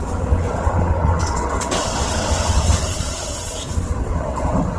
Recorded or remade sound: remade